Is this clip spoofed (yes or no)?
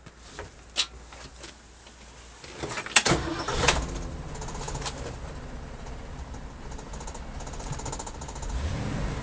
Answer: no